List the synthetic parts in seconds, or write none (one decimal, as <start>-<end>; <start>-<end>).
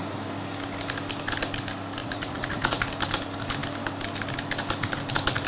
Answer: 2.0-2.9